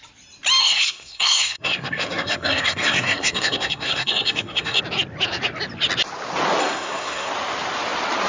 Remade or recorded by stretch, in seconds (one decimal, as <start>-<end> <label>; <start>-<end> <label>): 0.0-0.6 recorded; 0.6-4.8 remade; 4.8-6.6 recorded; 6.6-7.3 remade; 7.3-8.3 recorded